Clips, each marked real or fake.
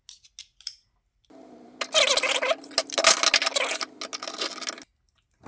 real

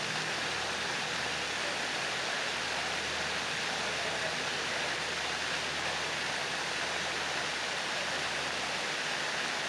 real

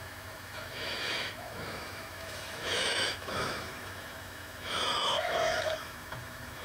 fake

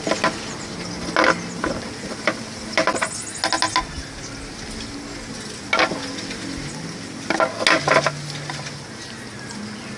real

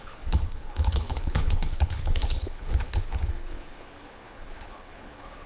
fake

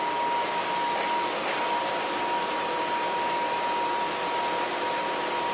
real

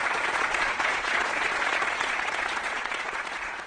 fake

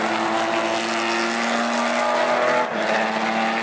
real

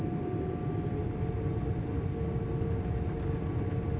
real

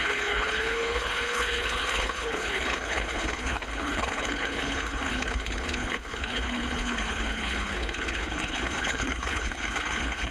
fake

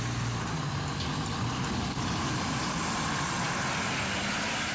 real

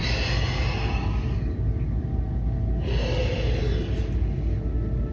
real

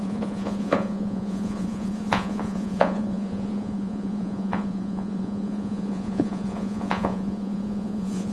fake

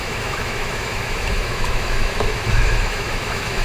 fake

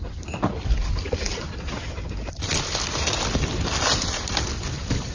real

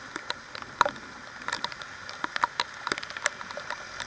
real